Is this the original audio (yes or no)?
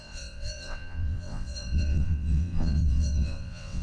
no